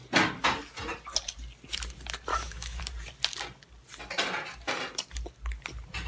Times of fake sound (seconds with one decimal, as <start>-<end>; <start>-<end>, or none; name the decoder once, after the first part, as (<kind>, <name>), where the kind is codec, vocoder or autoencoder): 2.3-2.8 (autoencoder, DAC-VAE)